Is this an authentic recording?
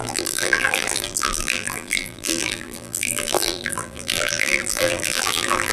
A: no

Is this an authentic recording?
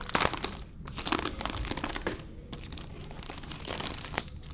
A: yes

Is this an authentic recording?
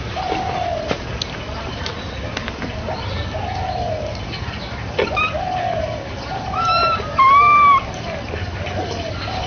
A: yes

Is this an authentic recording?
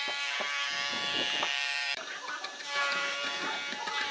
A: no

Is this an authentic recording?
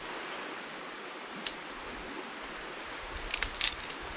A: yes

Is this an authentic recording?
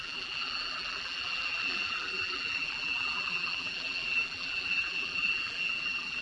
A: no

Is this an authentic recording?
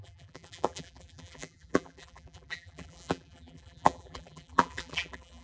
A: no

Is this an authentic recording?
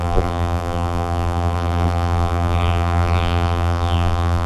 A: no